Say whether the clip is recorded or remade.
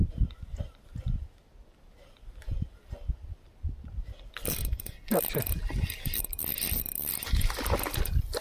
recorded